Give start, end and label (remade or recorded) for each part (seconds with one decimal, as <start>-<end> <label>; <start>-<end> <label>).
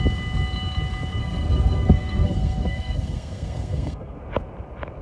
0.0-1.2 recorded; 1.2-4.2 remade; 4.2-5.0 recorded